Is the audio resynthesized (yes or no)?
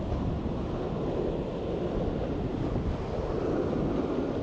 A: no